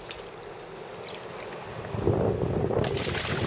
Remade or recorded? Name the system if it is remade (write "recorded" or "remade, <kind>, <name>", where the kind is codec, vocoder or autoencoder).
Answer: recorded